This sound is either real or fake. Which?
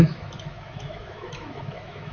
fake